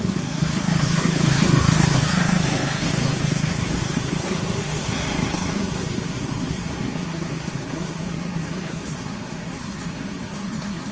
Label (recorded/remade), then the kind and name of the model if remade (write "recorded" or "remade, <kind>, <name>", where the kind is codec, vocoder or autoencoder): remade, codec, SNAC